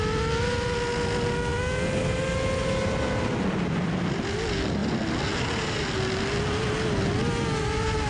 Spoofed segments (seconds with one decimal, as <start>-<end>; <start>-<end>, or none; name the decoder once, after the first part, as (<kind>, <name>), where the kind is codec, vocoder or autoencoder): none